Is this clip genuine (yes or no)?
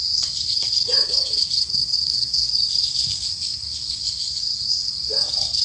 no